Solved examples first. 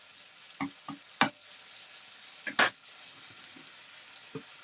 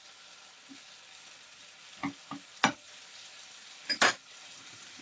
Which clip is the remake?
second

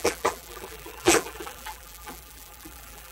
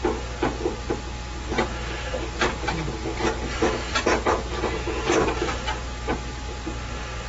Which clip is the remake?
first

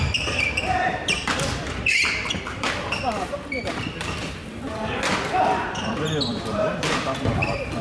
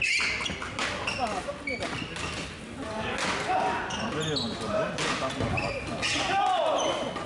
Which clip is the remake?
first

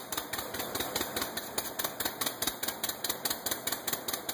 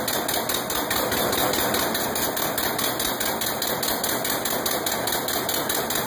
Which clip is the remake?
first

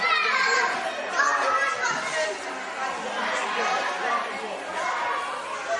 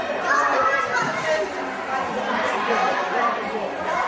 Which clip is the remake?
second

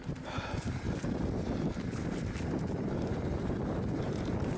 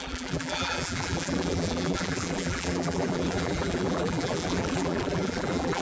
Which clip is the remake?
second